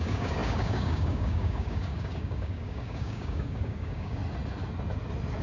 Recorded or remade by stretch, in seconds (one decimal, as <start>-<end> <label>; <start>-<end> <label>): 0.0-4.2 remade; 4.2-5.4 recorded